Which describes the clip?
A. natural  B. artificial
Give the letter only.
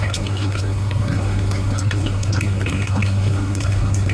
B